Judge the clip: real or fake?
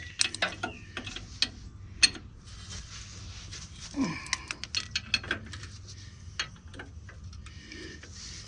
real